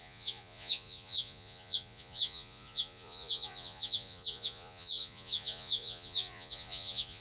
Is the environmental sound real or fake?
fake